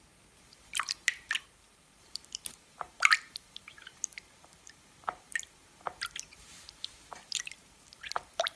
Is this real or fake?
fake